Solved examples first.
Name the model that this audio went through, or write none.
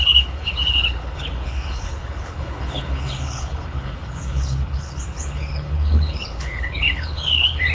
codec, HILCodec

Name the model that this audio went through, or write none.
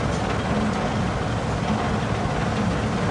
none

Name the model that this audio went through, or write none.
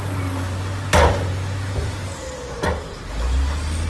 none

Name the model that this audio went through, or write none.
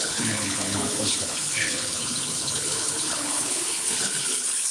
codec, HILCodec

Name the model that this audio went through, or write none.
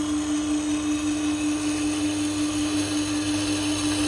none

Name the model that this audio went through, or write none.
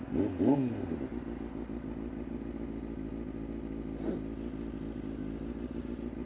none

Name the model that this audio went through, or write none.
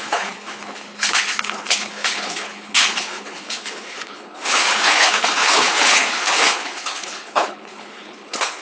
codec, HILCodec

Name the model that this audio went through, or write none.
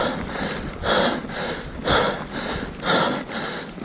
none